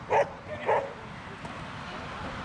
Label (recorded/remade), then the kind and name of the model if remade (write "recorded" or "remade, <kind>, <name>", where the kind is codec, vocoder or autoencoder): recorded